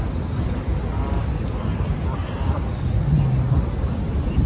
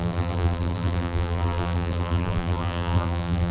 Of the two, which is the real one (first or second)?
first